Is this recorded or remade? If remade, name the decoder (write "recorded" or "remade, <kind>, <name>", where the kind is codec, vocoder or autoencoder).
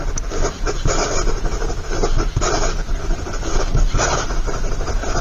recorded